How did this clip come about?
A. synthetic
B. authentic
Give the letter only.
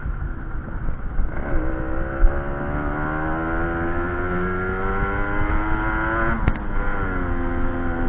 B